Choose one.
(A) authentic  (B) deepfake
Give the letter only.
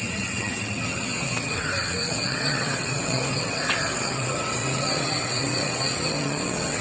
B